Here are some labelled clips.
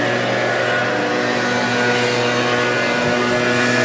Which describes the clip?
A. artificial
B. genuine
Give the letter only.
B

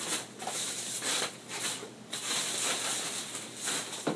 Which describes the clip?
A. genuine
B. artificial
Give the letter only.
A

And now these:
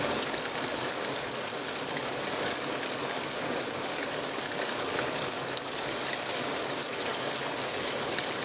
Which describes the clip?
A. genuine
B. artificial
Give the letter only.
B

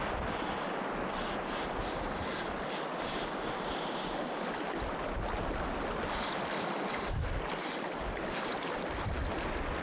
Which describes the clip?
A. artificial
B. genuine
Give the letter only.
B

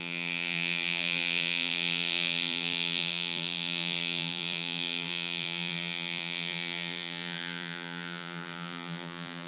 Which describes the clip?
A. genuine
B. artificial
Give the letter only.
B